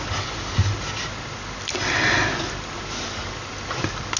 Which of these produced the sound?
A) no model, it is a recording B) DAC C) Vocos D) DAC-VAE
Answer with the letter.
A